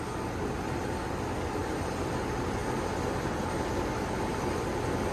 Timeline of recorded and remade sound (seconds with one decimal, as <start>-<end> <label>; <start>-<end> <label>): 0.0-1.6 recorded; 1.6-2.1 remade; 2.1-5.1 recorded